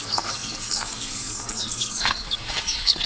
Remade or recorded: remade